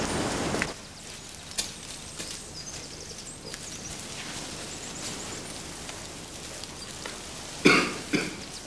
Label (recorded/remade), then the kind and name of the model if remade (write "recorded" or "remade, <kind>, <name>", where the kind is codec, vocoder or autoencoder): recorded